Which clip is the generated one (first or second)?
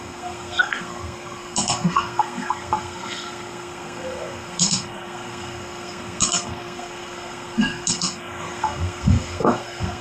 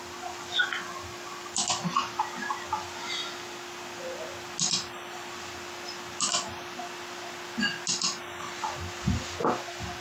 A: first